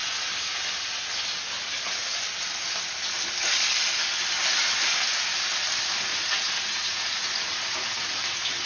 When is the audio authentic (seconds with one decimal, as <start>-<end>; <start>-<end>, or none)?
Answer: 0.0-6.1; 8.2-8.7